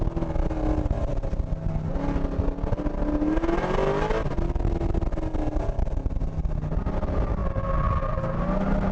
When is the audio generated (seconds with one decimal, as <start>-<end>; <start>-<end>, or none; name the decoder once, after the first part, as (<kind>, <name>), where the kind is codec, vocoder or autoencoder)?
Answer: none